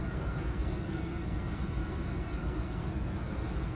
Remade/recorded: remade